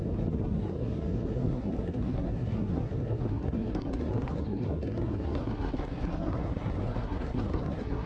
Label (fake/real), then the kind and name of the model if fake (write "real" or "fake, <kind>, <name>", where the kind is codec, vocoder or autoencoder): fake, codec, SNAC